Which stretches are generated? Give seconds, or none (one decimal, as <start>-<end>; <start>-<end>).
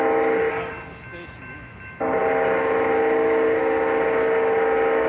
none